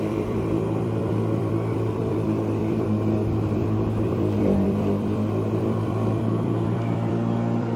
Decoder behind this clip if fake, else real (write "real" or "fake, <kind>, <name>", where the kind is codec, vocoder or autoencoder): fake, vocoder, BigVGAN v2